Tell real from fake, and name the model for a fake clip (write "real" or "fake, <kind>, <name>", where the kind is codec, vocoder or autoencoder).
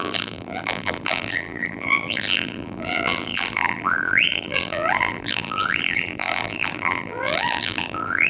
fake, vocoder, BigVGAN v2